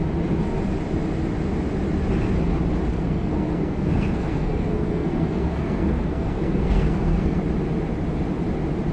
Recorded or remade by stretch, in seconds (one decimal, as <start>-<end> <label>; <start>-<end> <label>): 0.0-2.9 recorded; 2.9-7.4 remade; 7.4-8.9 recorded